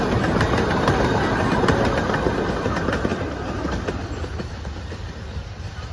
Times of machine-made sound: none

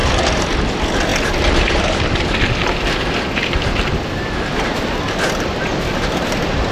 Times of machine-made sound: 0.0-0.5 (vocoder, BigVGAN v2); 1.1-2.1; 5.6-6.7